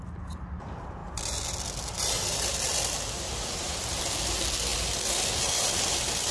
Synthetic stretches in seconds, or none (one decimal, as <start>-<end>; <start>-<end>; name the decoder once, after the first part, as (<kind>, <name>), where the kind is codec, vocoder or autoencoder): none